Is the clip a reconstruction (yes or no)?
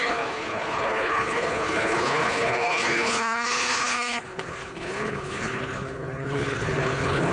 yes